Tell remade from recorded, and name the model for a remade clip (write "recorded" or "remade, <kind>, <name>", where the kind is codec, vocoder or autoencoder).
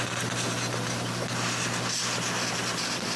recorded